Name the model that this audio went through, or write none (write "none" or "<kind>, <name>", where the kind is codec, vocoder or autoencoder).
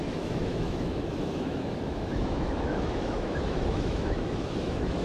autoencoder, DAC-VAE